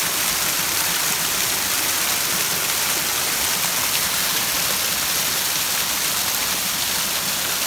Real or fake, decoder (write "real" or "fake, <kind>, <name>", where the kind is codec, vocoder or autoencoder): real